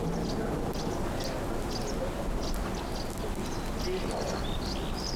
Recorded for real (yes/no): yes